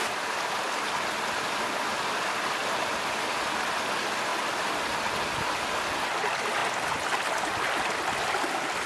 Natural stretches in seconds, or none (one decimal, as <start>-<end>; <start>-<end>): 0.0-8.9